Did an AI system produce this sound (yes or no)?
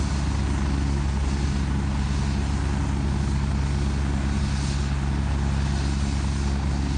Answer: no